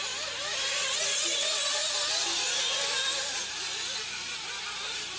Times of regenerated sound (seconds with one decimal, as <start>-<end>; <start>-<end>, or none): none